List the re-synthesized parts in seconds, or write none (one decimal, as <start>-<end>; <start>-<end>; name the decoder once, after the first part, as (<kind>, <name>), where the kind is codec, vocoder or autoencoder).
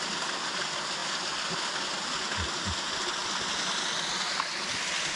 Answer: none